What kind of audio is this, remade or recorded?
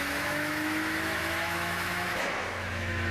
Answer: remade